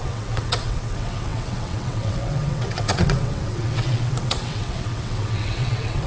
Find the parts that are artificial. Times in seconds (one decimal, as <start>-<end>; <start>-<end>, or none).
0.0-6.1